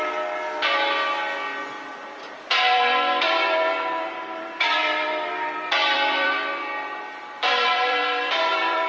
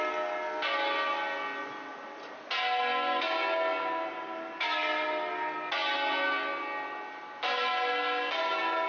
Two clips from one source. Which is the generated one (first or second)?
first